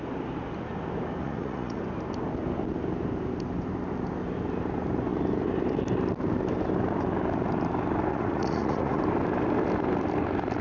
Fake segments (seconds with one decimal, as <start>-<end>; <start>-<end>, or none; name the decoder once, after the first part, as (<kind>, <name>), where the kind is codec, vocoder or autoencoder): 1.2-1.8 (vocoder, Vocos); 8.1-9.0